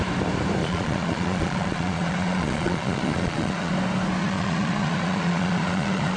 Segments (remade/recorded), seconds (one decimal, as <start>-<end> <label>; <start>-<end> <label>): 0.0-0.6 recorded; 0.6-3.7 remade; 3.7-4.2 recorded; 4.2-6.2 remade